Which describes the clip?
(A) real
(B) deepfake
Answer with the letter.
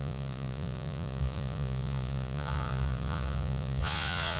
B